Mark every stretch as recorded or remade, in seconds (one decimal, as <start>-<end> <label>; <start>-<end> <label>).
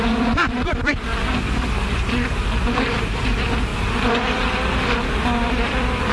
0.0-1.1 remade; 1.1-2.6 recorded; 2.6-3.7 remade; 3.7-5.0 recorded; 5.0-6.1 remade